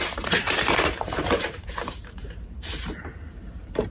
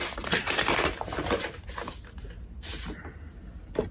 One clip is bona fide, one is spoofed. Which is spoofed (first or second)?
first